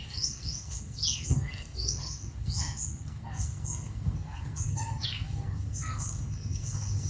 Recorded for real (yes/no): no